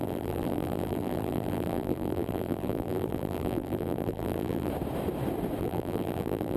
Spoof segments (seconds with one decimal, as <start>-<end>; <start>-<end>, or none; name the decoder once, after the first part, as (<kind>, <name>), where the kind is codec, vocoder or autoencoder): 0.0-4.7 (vocoder, BigVGAN v2); 5.6-6.6